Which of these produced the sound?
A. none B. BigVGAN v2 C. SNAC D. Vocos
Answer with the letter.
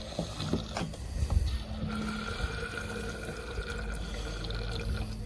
A